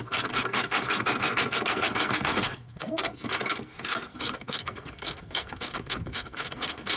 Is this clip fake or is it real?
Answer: fake